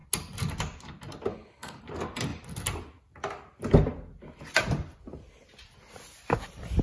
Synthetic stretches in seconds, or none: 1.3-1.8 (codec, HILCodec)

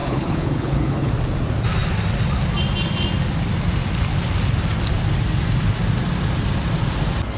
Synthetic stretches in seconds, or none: 0.0-1.1 (codec, HILCodec)

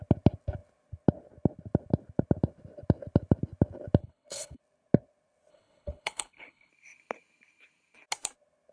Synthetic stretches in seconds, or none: 4.0-4.6 (codec, HILCodec); 5.5-6.7

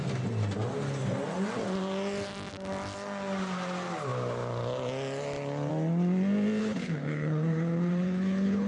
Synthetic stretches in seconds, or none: 6.6-8.7 (codec, HILCodec)

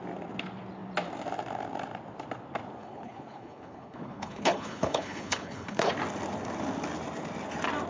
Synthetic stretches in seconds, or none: 2.8-5.9 (codec, HILCodec)

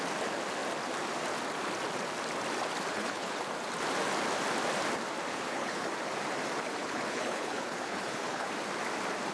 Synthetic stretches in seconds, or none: 2.9-3.4 (codec, HILCodec); 5.3-5.9; 6.8-8.5